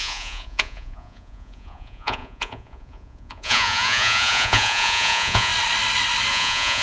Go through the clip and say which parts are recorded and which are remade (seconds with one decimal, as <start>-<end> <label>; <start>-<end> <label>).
0.0-5.5 remade; 5.5-6.3 recorded; 6.3-6.8 remade